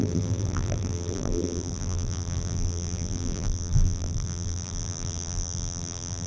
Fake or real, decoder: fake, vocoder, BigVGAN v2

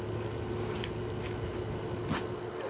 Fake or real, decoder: real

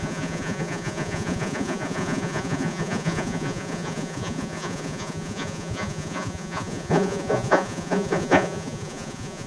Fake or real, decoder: fake, vocoder, Vocos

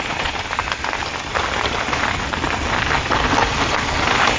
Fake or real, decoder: real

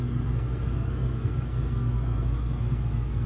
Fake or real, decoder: fake, codec, SNAC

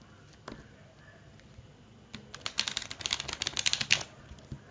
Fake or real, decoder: real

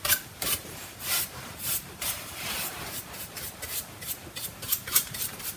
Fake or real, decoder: fake, vocoder, BigVGAN v2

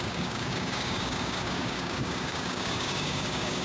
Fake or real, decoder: fake, codec, DAC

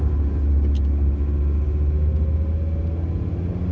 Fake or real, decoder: real